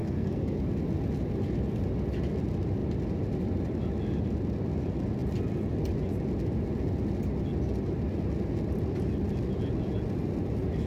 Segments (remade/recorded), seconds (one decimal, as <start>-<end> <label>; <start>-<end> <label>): 0.0-0.6 remade; 0.6-10.9 recorded